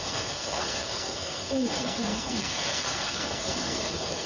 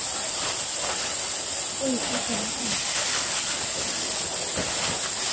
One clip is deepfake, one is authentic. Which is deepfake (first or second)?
first